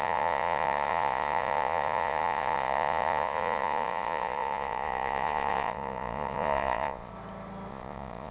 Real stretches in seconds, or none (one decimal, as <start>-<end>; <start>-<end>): 7.1-7.7